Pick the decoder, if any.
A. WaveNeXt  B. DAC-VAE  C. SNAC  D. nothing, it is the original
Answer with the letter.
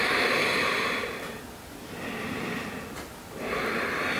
D